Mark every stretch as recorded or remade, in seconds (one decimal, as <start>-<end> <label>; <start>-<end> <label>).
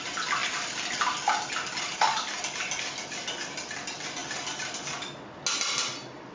0.0-6.3 recorded